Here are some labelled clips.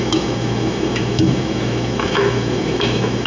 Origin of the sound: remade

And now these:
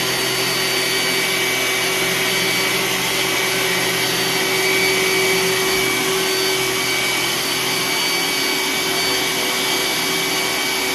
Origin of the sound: recorded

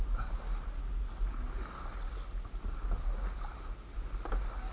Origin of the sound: recorded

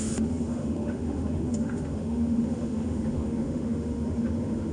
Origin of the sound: remade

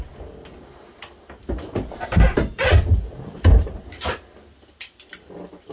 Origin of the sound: recorded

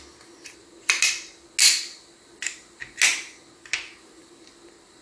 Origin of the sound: recorded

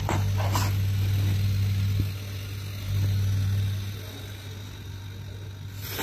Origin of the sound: recorded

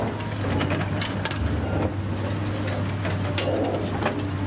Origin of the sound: recorded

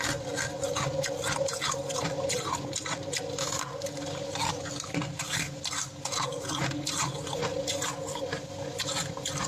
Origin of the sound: recorded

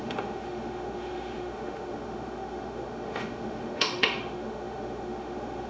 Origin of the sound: remade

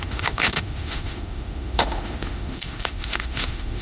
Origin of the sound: remade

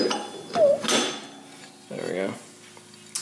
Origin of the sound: recorded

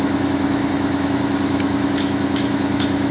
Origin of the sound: remade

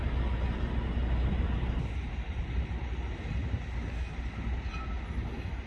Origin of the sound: recorded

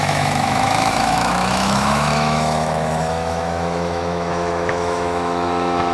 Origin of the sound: remade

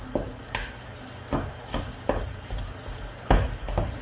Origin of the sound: recorded